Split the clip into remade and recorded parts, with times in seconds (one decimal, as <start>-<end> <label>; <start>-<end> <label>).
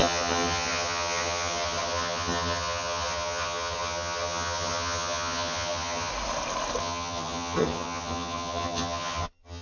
0.0-6.1 remade; 6.1-6.8 recorded; 6.8-9.6 remade